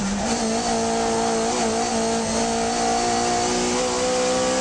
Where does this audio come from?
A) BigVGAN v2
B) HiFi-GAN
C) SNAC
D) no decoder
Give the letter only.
D